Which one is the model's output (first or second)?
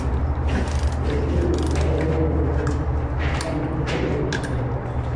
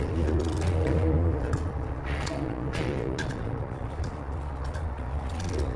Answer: second